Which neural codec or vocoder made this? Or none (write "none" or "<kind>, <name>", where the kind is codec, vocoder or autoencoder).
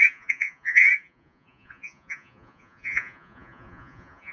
vocoder, Vocos